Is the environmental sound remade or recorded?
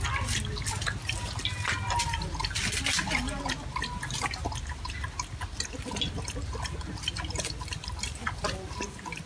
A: recorded